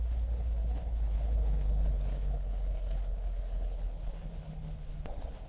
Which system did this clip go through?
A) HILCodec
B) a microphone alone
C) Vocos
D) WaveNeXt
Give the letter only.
A